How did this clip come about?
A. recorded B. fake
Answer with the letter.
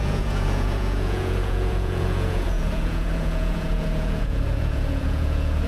B